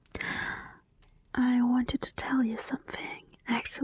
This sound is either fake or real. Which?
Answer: real